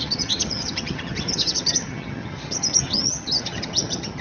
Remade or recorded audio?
remade